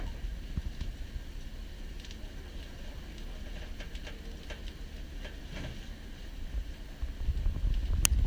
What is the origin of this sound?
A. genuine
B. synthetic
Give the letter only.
A